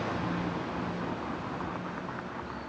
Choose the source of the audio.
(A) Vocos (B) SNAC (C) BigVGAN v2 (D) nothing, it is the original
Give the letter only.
D